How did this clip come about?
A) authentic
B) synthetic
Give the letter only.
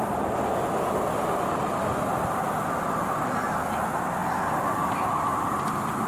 A